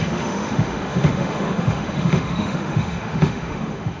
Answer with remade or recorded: remade